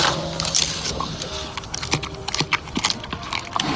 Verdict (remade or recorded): recorded